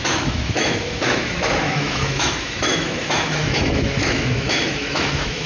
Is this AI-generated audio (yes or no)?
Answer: yes